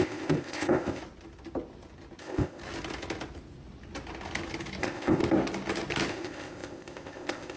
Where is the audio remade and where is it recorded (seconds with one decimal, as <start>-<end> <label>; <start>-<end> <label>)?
0.0-1.0 remade; 1.0-2.2 recorded; 2.2-2.6 remade; 2.6-4.8 recorded; 4.8-5.2 remade; 5.2-6.1 recorded; 6.1-7.6 remade